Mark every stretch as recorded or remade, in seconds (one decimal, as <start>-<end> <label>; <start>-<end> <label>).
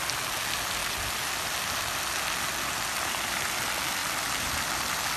0.0-5.2 recorded